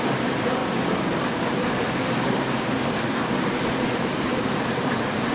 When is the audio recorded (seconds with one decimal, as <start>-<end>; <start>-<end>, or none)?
none